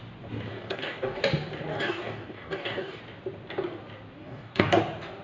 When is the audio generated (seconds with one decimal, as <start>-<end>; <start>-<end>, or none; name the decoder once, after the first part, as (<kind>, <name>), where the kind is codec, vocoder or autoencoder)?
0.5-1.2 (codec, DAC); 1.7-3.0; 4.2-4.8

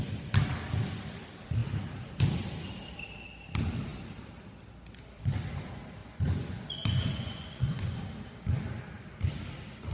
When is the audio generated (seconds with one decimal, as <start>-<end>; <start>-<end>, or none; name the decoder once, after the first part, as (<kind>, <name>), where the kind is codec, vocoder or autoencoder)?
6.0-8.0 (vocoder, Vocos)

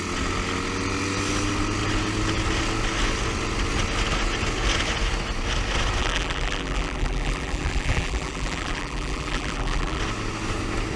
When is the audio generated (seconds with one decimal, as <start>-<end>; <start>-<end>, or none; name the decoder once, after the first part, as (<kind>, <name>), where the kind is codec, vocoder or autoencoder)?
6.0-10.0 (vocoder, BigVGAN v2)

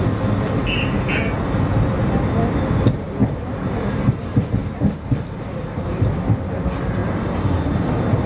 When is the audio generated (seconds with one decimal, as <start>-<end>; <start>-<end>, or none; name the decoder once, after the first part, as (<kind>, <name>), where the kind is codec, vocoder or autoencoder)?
3.2-4.0 (vocoder, BigVGAN v2); 7.0-7.9

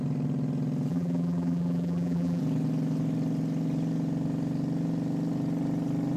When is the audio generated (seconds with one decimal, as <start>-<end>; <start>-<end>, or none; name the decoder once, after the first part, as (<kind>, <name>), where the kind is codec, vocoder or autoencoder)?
0.9-2.4 (vocoder, BigVGAN v2)

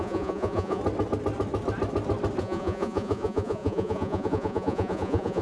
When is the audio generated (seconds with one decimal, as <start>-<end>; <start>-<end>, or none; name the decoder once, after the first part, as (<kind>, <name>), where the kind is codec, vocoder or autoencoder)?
0.0-0.8 (vocoder, Vocos); 2.4-5.4

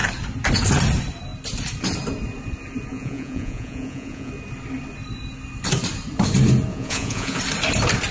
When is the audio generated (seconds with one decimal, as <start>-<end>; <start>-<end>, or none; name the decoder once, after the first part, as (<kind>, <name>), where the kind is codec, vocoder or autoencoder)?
2.9-4.3 (vocoder, Vocos); 6.7-7.4